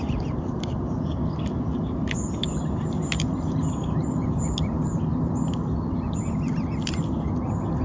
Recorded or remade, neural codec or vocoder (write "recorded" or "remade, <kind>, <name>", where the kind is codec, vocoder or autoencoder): recorded